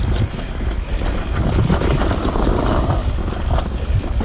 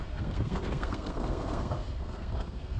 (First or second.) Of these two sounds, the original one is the first